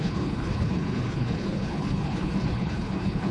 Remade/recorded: remade